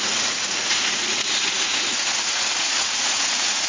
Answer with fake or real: fake